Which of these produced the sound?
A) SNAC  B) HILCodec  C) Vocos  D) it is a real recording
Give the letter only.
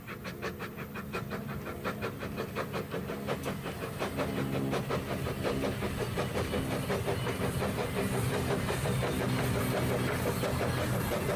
D